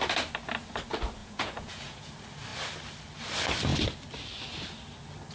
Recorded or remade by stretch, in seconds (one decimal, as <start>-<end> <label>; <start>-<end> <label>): 0.0-1.2 recorded; 1.2-2.1 remade; 2.1-5.3 recorded